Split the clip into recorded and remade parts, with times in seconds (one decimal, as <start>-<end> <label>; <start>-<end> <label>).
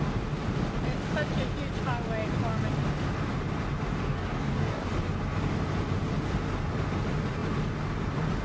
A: 0.0-4.1 recorded; 4.1-4.9 remade; 4.9-8.4 recorded